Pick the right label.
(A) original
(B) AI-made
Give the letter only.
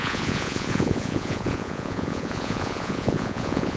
B